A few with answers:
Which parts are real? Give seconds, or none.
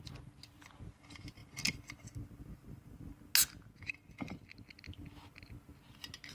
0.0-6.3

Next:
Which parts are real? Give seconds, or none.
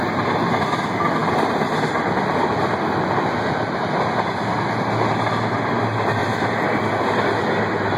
0.0-6.2; 6.8-8.0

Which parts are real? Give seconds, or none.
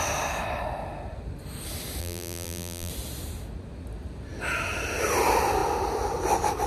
0.0-2.0; 2.9-6.7